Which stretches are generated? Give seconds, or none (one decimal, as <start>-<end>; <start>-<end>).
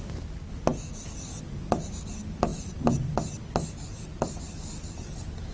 none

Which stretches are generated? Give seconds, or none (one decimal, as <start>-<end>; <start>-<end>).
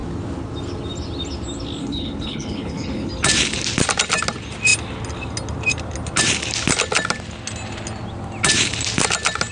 1.8-3.1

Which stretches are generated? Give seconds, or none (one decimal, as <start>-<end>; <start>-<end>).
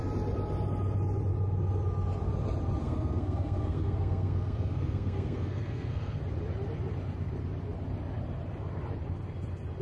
2.8-6.2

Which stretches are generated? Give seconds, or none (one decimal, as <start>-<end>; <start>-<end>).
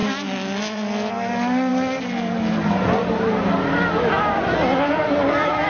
none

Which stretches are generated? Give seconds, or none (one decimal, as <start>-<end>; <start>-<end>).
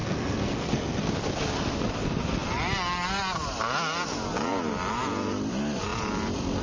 0.0-1.1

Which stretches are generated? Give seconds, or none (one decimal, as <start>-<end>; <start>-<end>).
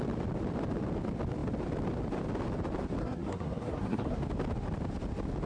3.0-4.2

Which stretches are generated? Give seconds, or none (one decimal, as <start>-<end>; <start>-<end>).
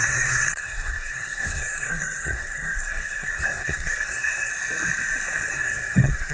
0.0-4.5; 5.5-6.3